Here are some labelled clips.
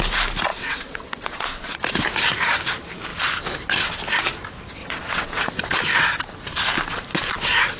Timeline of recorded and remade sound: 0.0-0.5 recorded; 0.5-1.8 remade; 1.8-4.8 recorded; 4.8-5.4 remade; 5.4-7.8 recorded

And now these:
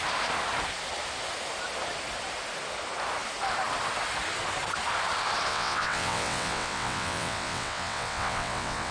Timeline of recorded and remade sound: 0.0-5.5 recorded; 5.5-8.9 remade

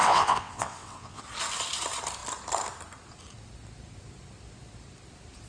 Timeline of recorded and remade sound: 0.0-1.2 remade; 1.2-5.5 recorded

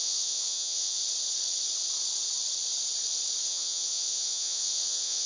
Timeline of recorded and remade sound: 0.0-1.0 remade; 1.0-3.5 recorded; 3.5-5.3 remade

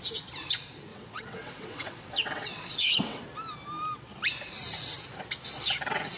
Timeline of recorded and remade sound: 0.0-0.9 recorded; 0.9-3.2 remade; 3.2-6.2 recorded

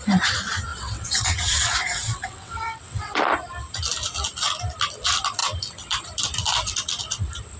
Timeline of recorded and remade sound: 0.0-0.7 recorded; 0.7-3.2 remade; 3.2-7.6 recorded

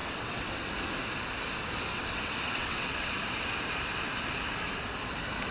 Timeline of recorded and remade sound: 0.0-0.7 remade; 0.7-1.9 recorded; 1.9-3.1 remade; 3.1-5.5 recorded

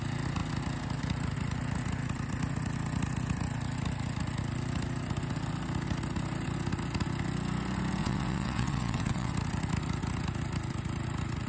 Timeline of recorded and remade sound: 0.0-8.0 recorded; 8.0-9.3 remade; 9.3-11.5 recorded